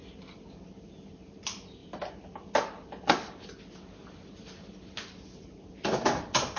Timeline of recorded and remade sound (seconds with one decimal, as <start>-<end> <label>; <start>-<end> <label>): 0.0-6.6 recorded

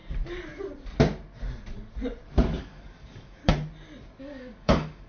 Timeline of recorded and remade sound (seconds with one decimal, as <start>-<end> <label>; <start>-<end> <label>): 0.0-2.6 recorded; 2.6-3.4 remade; 3.4-4.2 recorded; 4.2-5.1 remade

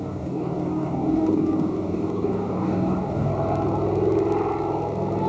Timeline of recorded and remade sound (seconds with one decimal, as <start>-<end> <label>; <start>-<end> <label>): 0.0-3.3 remade; 3.3-5.3 recorded